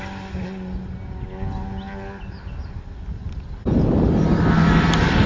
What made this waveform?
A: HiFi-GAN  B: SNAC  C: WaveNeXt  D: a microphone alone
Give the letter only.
D